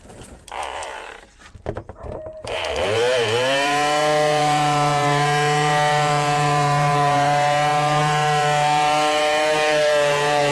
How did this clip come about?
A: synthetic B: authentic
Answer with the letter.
A